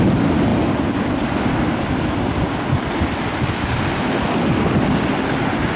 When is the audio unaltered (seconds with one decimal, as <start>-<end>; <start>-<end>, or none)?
0.0-5.8